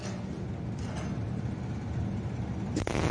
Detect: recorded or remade recorded